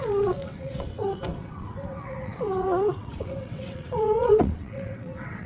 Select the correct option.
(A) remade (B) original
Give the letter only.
A